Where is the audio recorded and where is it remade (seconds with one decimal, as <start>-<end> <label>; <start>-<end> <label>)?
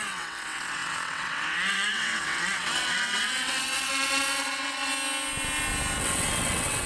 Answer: 0.0-4.9 remade; 4.9-6.0 recorded; 6.0-6.9 remade